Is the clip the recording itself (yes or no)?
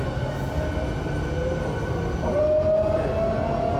yes